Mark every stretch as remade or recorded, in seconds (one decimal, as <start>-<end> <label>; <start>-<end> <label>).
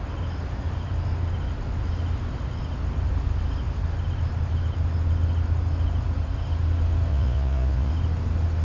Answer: 0.0-7.1 recorded; 7.1-7.9 remade; 7.9-8.6 recorded